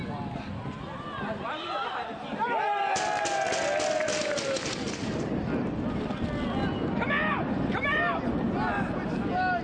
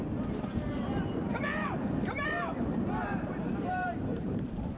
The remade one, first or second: second